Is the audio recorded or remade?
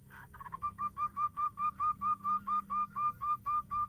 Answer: remade